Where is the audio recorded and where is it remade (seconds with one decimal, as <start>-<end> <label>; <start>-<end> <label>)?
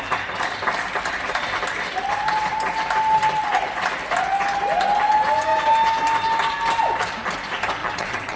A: 0.0-7.8 recorded; 7.8-8.4 remade